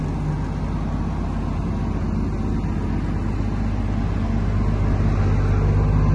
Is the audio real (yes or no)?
yes